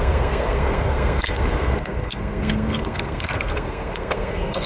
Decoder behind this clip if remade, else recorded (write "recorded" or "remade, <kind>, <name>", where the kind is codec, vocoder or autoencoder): remade, codec, SNAC